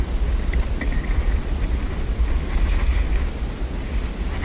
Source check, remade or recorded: recorded